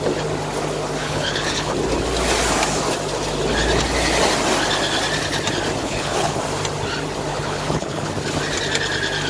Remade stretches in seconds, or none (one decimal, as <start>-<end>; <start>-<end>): 1.0-1.7; 5.8-6.4; 7.3-8.1